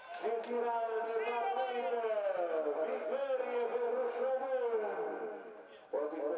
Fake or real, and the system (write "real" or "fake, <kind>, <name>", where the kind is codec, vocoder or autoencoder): real